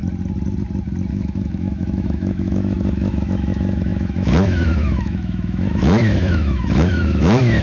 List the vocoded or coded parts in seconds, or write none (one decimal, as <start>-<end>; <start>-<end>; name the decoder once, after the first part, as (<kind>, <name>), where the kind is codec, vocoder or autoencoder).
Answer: 1.1-7.6 (autoencoder, DAC-VAE)